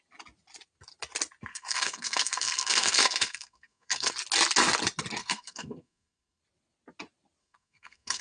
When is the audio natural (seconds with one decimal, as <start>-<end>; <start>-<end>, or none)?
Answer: 0.0-1.5; 4.1-5.2; 6.4-7.4